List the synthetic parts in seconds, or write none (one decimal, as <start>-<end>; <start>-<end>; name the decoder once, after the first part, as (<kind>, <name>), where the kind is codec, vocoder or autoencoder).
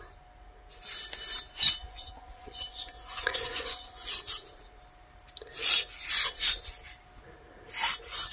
1.8-4.1 (vocoder, Vocos)